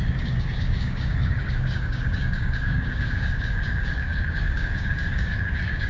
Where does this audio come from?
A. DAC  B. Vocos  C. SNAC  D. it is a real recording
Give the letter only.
A